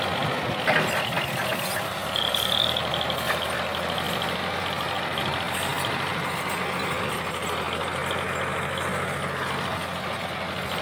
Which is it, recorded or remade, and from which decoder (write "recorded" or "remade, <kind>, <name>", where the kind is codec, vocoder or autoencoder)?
recorded